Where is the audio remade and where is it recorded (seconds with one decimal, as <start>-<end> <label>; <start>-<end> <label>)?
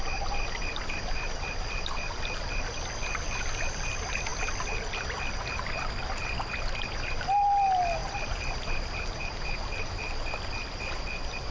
0.0-11.5 recorded